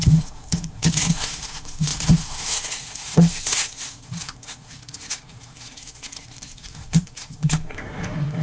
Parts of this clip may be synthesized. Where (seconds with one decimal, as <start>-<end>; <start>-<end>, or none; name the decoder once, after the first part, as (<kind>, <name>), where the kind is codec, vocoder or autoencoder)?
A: 0.0-8.4 (codec, SNAC)